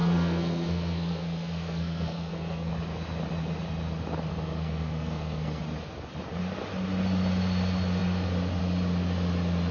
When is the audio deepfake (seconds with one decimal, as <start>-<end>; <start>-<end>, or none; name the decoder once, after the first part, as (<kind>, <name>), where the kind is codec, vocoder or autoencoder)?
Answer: 0.0-2.7 (codec, SNAC); 4.3-5.6

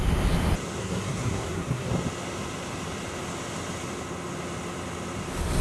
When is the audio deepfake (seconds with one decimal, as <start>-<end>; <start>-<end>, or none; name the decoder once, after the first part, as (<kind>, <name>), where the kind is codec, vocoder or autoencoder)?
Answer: 0.8-1.9 (codec, SNAC)

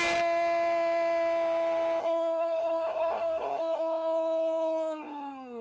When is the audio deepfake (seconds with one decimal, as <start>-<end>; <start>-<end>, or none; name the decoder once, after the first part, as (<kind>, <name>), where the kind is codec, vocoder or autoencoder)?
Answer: 2.0-5.6 (codec, SNAC)

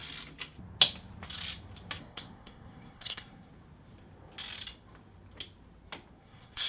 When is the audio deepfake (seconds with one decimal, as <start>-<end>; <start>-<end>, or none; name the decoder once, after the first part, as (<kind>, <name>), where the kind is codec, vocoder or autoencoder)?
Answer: 2.0-3.5 (codec, SNAC); 6.2-6.7